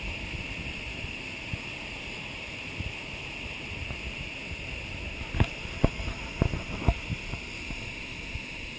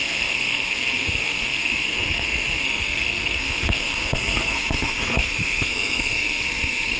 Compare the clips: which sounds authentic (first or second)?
first